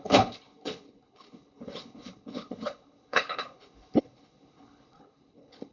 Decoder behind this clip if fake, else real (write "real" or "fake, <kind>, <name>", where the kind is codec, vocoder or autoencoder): fake, codec, HILCodec